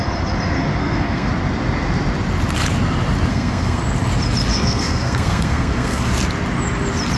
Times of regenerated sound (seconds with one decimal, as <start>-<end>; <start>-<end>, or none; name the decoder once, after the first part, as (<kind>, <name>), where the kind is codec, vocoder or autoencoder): 0.8-1.3 (codec, SNAC); 3.3-3.8; 4.5-6.1